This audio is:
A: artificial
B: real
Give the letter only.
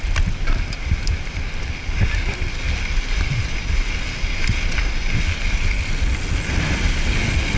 B